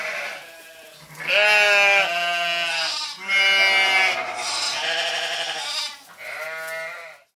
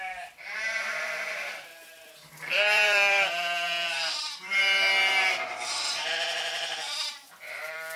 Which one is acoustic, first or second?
first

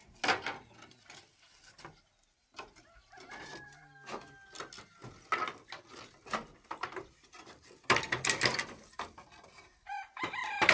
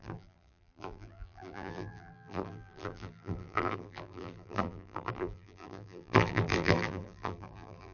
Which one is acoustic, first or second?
first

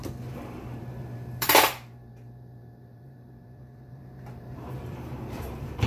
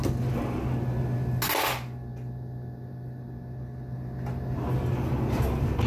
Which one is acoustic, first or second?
second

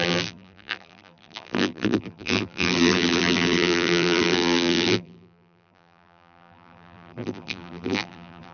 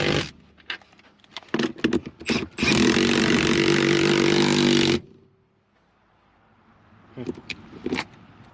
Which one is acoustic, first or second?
second